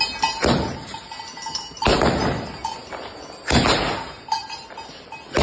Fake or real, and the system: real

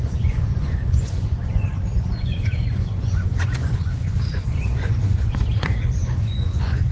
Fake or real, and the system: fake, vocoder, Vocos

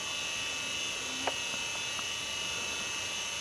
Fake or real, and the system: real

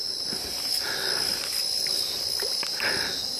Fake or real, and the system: real